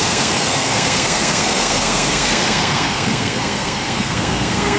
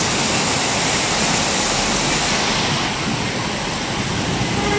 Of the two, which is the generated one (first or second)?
first